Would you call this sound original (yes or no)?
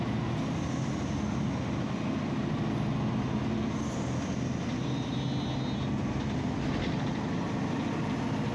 yes